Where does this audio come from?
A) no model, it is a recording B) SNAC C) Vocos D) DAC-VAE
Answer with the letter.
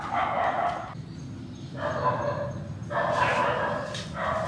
A